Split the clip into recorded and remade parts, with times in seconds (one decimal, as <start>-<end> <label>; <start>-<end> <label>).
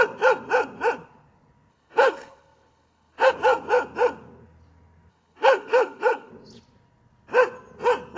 0.0-1.7 recorded; 1.7-3.3 remade; 3.3-5.1 recorded; 5.1-6.3 remade; 6.3-8.2 recorded